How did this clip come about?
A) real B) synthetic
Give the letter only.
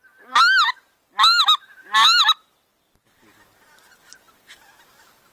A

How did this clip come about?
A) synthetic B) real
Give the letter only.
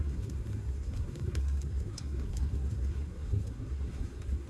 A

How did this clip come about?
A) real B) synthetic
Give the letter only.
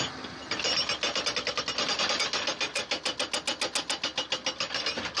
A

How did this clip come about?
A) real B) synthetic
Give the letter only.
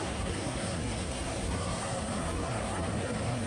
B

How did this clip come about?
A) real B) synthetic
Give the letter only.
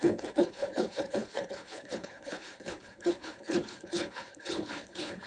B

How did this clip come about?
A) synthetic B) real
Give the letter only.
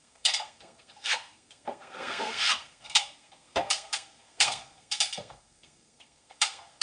A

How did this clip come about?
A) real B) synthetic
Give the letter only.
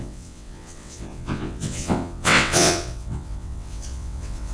B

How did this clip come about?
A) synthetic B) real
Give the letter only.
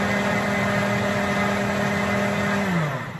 B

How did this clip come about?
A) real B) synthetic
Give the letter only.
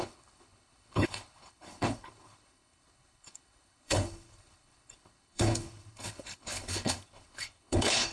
B